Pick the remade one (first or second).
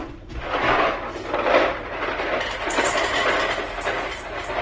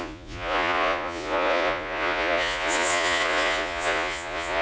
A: second